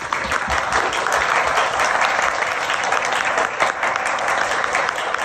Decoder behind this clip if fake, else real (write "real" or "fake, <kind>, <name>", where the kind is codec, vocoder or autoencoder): real